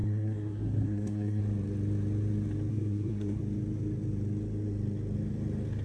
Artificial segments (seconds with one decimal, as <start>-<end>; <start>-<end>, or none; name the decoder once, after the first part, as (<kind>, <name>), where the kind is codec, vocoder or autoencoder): 0.0-1.4 (codec, SNAC); 2.7-3.4

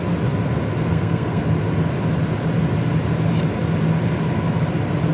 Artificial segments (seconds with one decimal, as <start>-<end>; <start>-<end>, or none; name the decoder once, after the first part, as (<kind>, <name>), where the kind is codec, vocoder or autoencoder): 0.8-1.4 (codec, SNAC)

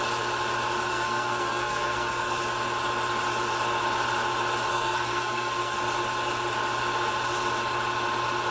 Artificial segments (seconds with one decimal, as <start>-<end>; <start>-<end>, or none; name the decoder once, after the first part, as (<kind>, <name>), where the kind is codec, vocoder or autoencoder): 0.9-2.4 (codec, SNAC); 4.7-5.8